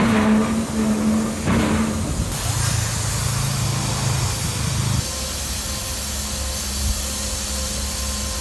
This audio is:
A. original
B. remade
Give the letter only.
A